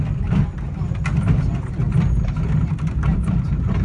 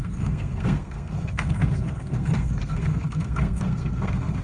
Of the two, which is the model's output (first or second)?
second